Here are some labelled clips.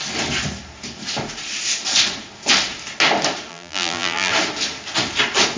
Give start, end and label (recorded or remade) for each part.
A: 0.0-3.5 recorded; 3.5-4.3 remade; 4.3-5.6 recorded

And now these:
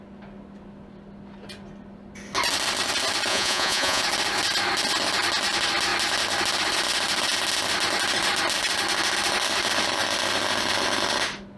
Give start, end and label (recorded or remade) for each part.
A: 0.0-3.3 recorded; 3.3-4.0 remade; 4.0-11.6 recorded